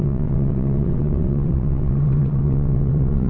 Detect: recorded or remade remade